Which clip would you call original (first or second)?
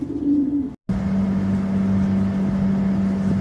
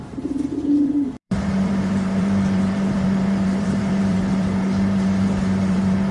first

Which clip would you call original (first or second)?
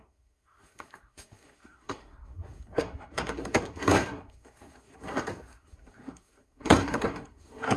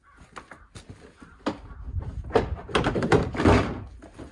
second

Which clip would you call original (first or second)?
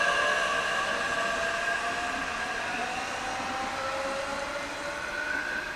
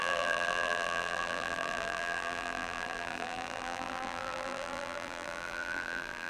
first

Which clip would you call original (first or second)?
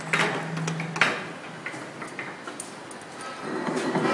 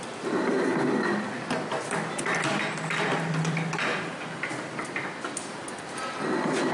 first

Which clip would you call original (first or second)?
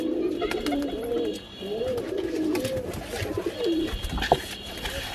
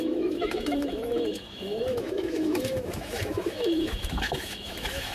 first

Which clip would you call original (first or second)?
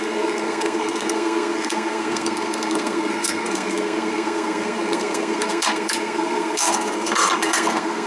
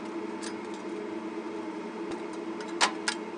second